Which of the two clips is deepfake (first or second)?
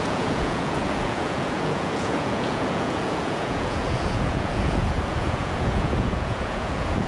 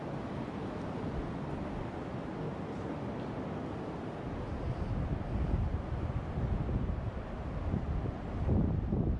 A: first